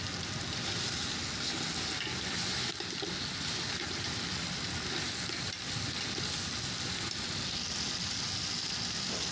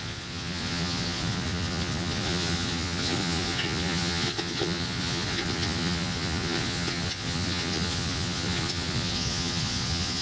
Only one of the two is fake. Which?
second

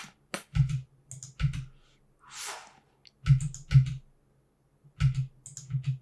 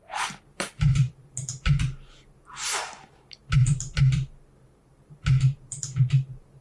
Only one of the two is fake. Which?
second